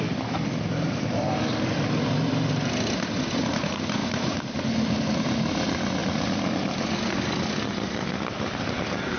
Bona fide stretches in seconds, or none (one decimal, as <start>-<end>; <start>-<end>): 6.0-8.7